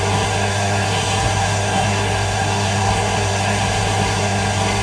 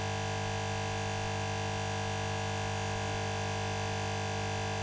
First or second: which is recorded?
second